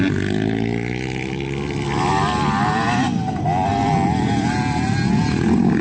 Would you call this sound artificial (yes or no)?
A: no